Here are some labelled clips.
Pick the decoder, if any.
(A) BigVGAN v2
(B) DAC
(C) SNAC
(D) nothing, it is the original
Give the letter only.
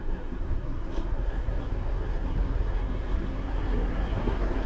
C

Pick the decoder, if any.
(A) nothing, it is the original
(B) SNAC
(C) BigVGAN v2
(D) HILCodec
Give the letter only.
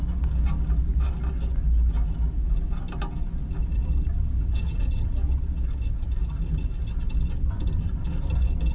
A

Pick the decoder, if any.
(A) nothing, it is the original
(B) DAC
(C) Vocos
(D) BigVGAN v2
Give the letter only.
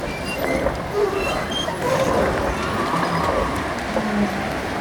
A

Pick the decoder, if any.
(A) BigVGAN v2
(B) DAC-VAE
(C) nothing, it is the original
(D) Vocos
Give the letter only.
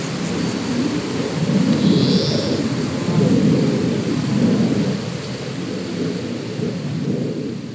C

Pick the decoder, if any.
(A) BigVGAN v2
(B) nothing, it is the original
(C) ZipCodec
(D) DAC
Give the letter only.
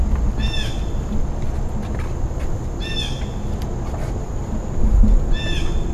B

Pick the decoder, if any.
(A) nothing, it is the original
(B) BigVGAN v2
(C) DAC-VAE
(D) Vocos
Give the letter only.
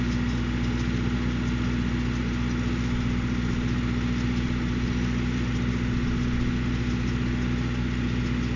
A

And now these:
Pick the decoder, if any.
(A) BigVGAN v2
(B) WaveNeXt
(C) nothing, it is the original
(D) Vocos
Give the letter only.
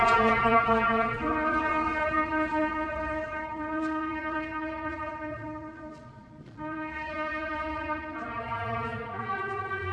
D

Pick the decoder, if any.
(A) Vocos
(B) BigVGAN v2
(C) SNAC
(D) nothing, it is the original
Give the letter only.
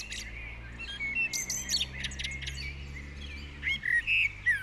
D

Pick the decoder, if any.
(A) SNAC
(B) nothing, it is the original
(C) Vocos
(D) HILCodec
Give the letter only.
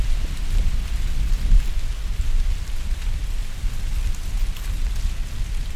B